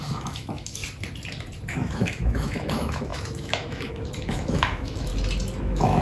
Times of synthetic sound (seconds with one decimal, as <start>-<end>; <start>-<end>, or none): 0.0-0.8; 1.7-5.1; 5.6-6.0